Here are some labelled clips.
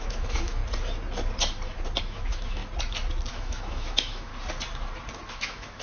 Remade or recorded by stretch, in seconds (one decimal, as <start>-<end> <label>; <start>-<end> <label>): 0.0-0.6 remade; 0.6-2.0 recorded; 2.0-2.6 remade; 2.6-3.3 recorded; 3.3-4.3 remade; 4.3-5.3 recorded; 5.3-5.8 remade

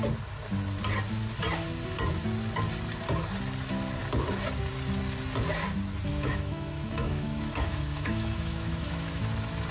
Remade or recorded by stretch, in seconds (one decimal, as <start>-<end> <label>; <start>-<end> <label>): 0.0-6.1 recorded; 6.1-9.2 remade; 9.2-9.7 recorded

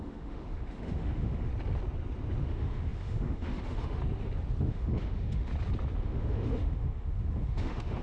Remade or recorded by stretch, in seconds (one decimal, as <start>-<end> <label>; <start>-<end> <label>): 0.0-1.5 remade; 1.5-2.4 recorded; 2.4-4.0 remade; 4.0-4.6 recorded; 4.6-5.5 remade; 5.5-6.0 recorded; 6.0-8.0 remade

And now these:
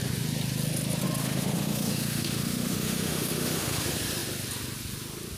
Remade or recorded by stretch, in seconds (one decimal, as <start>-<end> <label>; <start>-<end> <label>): 0.0-1.2 recorded; 1.2-3.8 remade; 3.8-5.4 recorded

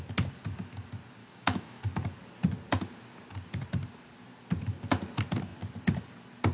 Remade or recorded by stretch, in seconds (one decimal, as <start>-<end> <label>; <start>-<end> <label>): 0.0-1.2 recorded; 1.2-1.8 remade; 1.8-6.5 recorded

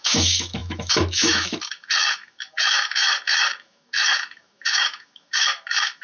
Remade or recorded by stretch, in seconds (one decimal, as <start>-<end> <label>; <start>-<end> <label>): 0.0-6.0 remade

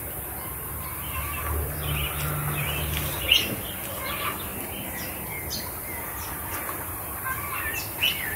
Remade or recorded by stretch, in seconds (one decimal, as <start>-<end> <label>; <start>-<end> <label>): 0.0-8.4 recorded

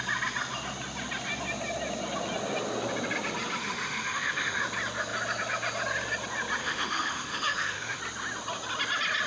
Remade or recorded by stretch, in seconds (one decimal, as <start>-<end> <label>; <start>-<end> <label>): 0.0-3.6 recorded; 3.6-4.6 remade; 4.6-6.6 recorded; 6.6-8.0 remade; 8.0-9.3 recorded